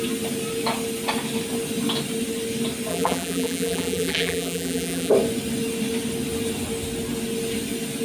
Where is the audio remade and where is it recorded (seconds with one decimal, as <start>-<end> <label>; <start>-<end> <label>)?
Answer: 0.0-2.9 recorded; 2.9-5.1 remade; 5.1-8.0 recorded